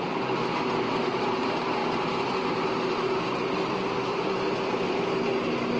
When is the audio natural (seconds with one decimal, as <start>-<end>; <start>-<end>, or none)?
0.0-5.8

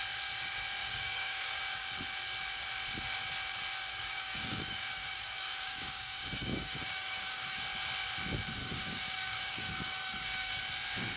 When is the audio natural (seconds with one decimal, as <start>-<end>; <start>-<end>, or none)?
0.0-0.8; 1.6-3.9; 7.6-8.6; 10.6-11.2

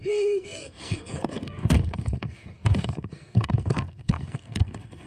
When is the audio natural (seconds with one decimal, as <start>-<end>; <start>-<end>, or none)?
none